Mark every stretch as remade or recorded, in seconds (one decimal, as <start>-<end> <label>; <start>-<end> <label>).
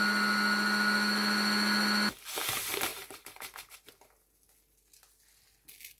0.0-2.9 recorded; 2.9-3.9 remade; 3.9-6.0 recorded